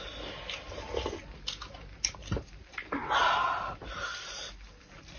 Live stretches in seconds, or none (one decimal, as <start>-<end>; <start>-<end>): 0.0-5.2